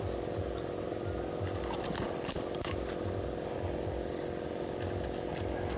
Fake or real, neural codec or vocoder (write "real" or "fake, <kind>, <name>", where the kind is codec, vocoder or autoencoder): real